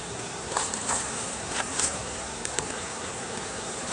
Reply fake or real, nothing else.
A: fake